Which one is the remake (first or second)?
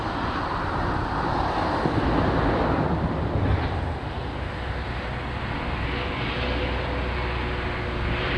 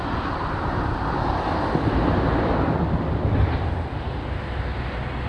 second